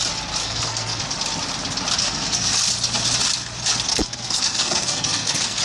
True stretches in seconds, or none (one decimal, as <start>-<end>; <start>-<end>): 0.0-0.4; 1.0-2.0; 2.5-3.9